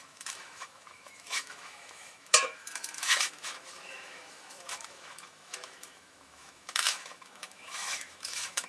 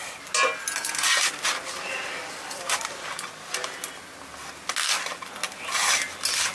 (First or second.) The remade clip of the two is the first